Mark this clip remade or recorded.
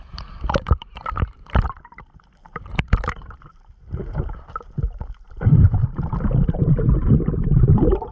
remade